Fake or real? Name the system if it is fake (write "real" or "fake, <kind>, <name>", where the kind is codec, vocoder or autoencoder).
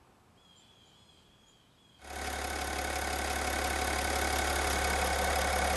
real